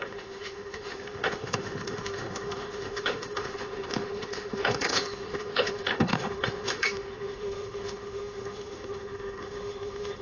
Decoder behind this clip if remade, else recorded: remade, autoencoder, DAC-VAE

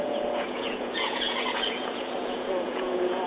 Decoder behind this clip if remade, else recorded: remade, vocoder, Vocos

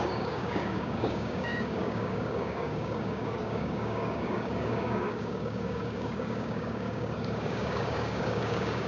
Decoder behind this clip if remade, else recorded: remade, codec, DAC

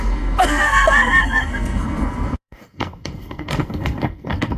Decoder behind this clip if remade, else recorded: remade, codec, SNAC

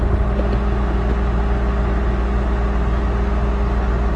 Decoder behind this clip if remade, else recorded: recorded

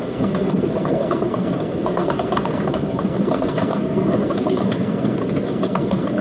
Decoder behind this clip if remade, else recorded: remade, codec, SNAC